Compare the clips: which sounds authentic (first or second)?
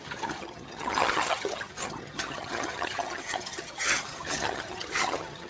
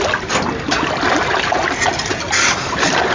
second